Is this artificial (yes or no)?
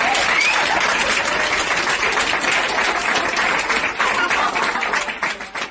no